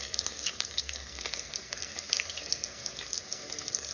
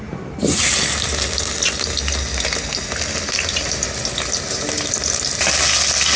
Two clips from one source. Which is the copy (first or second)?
first